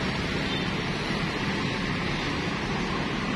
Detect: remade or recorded recorded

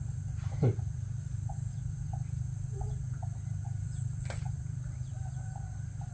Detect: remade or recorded recorded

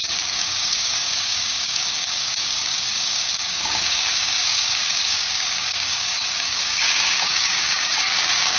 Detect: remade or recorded remade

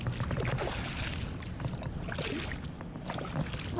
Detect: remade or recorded recorded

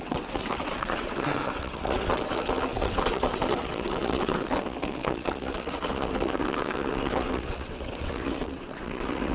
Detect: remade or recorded remade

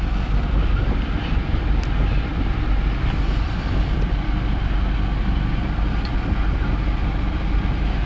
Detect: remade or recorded remade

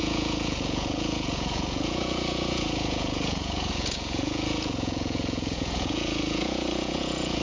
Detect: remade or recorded remade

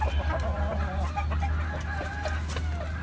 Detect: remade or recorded recorded